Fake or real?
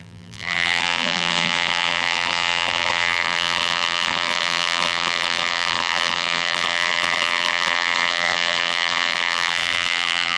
fake